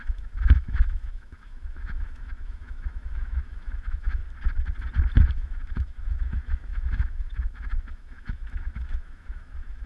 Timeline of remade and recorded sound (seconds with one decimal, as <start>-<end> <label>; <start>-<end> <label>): 0.0-4.2 remade; 4.2-5.3 recorded; 5.3-9.9 remade